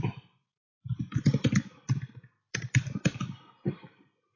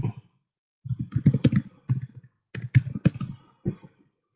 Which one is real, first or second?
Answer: second